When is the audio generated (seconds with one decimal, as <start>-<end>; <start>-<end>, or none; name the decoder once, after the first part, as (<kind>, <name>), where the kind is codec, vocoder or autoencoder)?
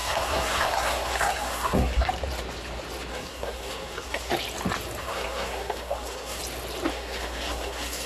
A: 0.0-2.1 (codec, SNAC); 3.1-4.3; 5.0-6.4; 6.9-8.1